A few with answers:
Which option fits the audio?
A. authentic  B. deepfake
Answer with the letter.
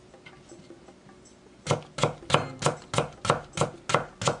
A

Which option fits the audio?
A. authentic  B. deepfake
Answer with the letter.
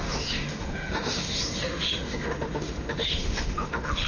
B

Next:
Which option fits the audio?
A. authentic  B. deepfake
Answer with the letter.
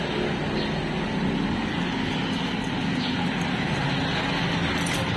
A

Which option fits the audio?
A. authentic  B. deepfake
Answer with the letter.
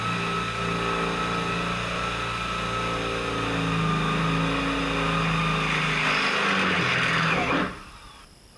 A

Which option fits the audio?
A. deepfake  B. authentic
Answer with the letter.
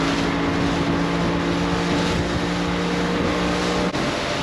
B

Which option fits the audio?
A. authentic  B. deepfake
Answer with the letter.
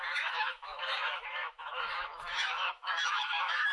B